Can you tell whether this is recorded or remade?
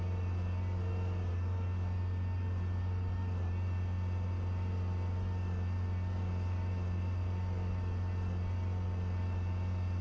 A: recorded